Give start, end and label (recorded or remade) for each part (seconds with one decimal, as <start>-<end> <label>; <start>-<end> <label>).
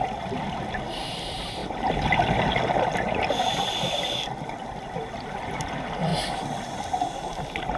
0.0-1.6 remade; 1.6-2.8 recorded; 2.8-6.1 remade; 6.1-7.8 recorded